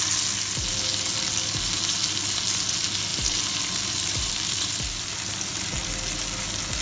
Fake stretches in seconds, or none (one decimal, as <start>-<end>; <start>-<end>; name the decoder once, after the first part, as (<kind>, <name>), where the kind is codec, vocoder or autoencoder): 3.1-5.3 (vocoder, BigVGAN v2)